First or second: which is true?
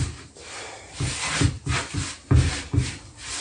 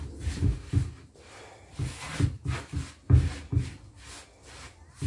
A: second